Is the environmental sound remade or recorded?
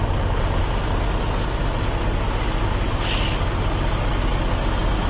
recorded